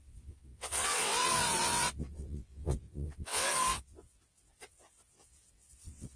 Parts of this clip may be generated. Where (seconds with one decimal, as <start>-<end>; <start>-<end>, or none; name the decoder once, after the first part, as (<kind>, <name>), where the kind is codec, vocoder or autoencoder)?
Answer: 0.0-6.2 (vocoder, WaveNeXt)